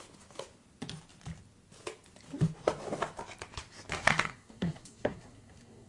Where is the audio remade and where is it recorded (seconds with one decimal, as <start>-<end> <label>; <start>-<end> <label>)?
0.0-4.0 recorded; 4.0-5.9 remade